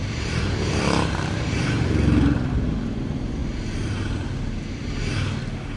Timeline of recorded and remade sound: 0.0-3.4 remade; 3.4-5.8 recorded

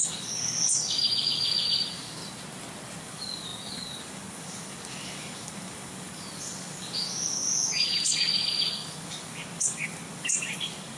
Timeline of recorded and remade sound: 0.0-2.2 remade; 2.2-3.0 recorded; 3.0-11.0 remade

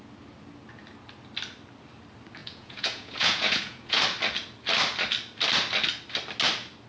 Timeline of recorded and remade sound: 0.0-2.4 recorded; 2.4-4.0 remade; 4.0-6.9 recorded

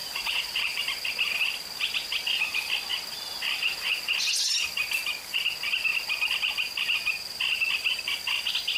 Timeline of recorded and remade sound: 0.0-0.8 remade; 0.8-8.8 recorded

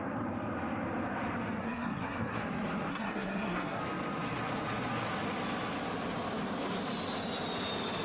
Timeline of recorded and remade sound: 0.0-1.6 recorded; 1.6-2.4 remade; 2.4-2.9 recorded; 2.9-3.8 remade; 3.8-8.0 recorded

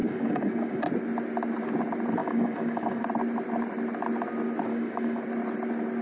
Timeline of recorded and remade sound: 0.0-0.8 remade; 0.8-2.2 recorded; 2.2-3.0 remade; 3.0-4.7 recorded; 4.7-5.2 remade; 5.2-6.0 recorded

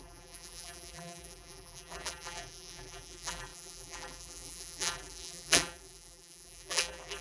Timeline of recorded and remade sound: 0.0-7.2 remade

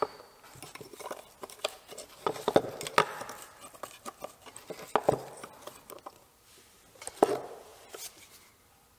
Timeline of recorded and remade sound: 0.0-9.0 recorded